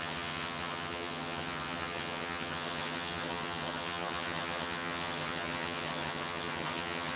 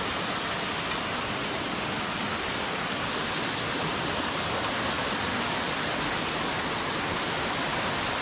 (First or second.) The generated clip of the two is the first